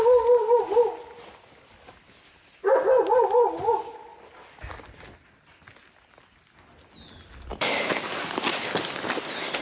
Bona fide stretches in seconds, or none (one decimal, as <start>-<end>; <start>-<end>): 0.0-9.6